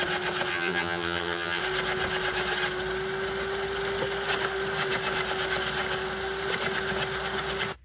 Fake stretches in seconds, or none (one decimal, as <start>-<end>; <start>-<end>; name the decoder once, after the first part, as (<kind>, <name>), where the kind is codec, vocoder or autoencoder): 0.5-1.6 (vocoder, HiFi-GAN)